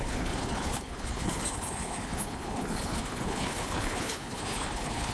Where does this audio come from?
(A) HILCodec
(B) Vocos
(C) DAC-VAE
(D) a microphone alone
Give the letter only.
A